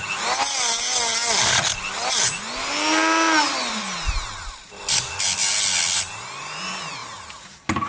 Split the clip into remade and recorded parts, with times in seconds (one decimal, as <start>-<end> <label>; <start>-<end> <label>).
0.0-7.9 recorded